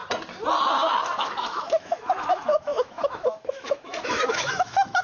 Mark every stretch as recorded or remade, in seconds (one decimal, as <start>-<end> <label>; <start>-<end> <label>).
0.0-1.2 recorded; 1.2-5.0 remade

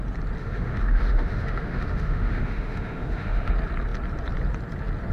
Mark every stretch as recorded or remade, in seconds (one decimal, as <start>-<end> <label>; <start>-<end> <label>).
0.0-0.4 recorded; 0.4-3.5 remade; 3.5-5.1 recorded

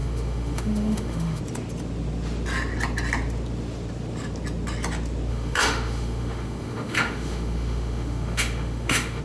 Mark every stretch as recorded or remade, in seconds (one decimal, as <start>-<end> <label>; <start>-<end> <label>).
0.0-1.4 remade; 1.4-5.3 recorded; 5.3-9.2 remade

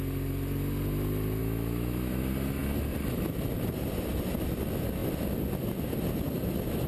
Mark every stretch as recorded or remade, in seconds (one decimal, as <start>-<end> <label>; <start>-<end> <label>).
0.0-1.4 recorded; 1.4-2.2 remade; 2.2-6.9 recorded

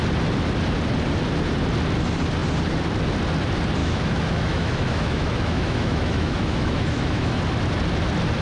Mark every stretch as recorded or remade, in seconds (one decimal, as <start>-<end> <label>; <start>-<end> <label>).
0.0-3.8 recorded; 3.8-7.4 remade; 7.4-8.4 recorded